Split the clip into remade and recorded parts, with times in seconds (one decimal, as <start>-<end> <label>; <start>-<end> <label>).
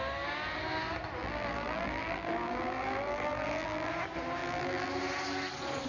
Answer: 0.0-1.2 recorded; 1.2-3.9 remade; 3.9-4.4 recorded; 4.4-4.9 remade; 4.9-5.9 recorded